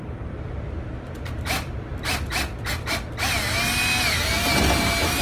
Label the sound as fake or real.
real